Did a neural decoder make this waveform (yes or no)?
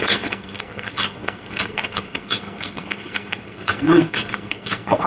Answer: yes